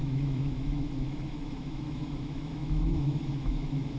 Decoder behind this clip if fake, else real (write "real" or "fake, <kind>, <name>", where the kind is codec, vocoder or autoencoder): fake, autoencoder, DAC-VAE